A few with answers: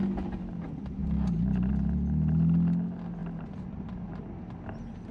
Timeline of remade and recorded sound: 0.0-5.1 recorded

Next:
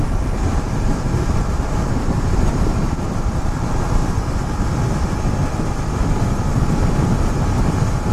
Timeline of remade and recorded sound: 0.0-4.0 remade; 4.0-6.1 recorded; 6.1-8.1 remade

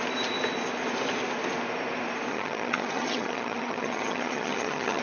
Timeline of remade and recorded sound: 0.0-2.3 recorded; 2.3-5.0 remade

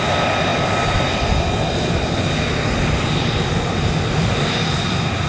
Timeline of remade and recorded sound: 0.0-5.3 recorded

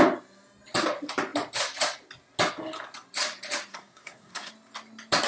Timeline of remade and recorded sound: 0.0-3.7 recorded; 3.7-4.5 remade; 4.5-5.3 recorded